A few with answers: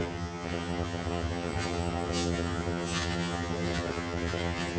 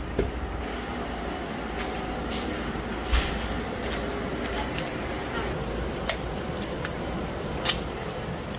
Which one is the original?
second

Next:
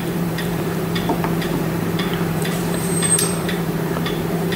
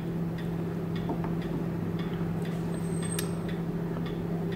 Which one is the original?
second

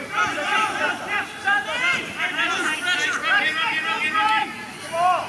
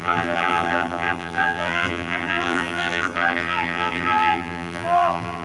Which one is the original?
first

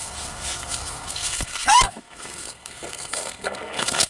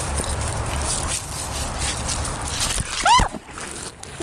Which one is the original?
second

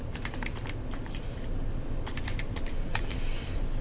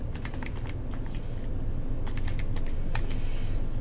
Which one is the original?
second